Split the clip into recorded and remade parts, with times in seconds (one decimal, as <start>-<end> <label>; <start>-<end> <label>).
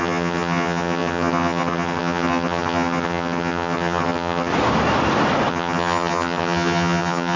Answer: 0.0-4.5 remade; 4.5-5.5 recorded; 5.5-7.4 remade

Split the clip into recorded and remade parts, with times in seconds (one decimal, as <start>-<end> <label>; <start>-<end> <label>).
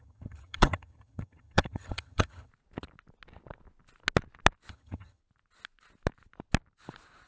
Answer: 0.0-2.5 remade; 2.5-4.7 recorded; 4.7-5.2 remade; 5.2-7.3 recorded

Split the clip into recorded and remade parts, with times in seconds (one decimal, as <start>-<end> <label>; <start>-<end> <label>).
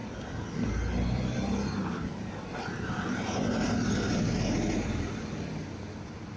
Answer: 0.0-6.4 recorded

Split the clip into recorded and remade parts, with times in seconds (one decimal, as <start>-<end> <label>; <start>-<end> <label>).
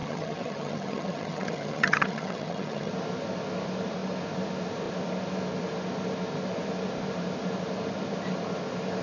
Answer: 0.0-2.9 remade; 2.9-9.0 recorded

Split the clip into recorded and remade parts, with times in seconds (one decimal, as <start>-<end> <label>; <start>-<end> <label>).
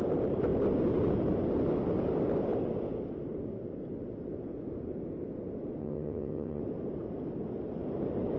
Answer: 0.0-5.8 recorded; 5.8-6.6 remade; 6.6-8.4 recorded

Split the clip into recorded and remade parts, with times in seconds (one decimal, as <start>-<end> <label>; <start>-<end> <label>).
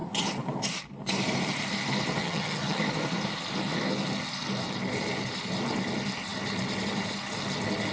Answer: 0.0-2.2 recorded; 2.2-2.8 remade; 2.8-7.9 recorded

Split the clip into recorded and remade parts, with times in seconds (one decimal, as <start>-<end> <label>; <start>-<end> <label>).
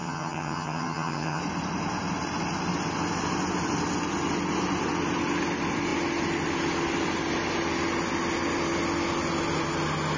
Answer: 0.0-1.4 remade; 1.4-10.2 recorded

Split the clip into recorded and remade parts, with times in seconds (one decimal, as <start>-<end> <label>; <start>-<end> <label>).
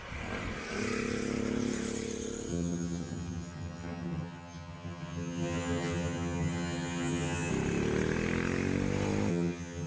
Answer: 0.0-2.5 recorded; 2.5-7.5 remade; 7.5-9.3 recorded; 9.3-9.9 remade